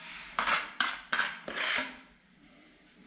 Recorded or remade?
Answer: remade